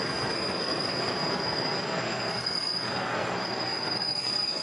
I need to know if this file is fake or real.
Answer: fake